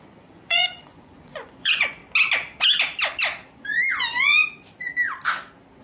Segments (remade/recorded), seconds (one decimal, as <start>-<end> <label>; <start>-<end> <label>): 0.0-2.0 remade; 2.0-3.9 recorded; 3.9-4.4 remade; 4.4-5.8 recorded